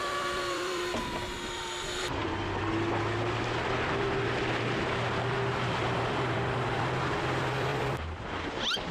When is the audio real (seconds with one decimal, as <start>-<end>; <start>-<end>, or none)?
2.2-5.6

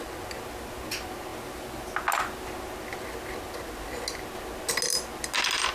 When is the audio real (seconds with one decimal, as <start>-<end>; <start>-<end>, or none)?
0.0-5.7

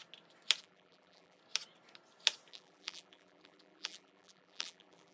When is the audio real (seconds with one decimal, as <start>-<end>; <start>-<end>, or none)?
0.0-0.6; 1.4-2.5

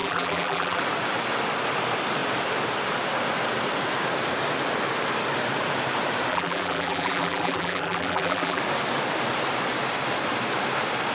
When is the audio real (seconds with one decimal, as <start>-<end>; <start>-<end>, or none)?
0.8-6.3; 8.6-11.1

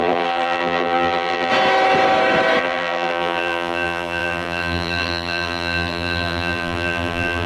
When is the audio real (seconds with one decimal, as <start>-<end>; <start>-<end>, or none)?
1.5-2.6